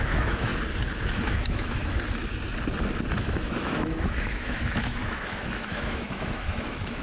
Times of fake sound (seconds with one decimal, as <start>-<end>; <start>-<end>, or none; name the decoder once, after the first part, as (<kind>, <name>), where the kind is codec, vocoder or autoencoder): 0.0-0.5 (autoencoder, DAC-VAE); 1.3-1.8; 3.2-7.0